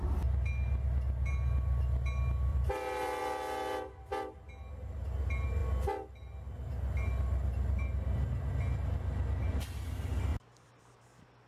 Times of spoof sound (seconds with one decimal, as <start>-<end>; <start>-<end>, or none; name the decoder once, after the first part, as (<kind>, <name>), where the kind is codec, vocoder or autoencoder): 2.5-3.2 (vocoder, BigVGAN v2); 10.3-11.0